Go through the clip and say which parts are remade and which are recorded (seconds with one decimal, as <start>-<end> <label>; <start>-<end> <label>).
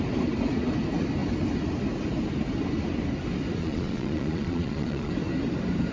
0.0-3.6 recorded; 3.6-5.1 remade; 5.1-5.9 recorded